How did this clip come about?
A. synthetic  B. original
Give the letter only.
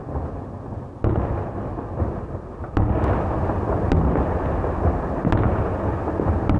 B